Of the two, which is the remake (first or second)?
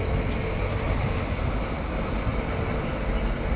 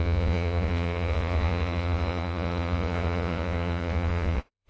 second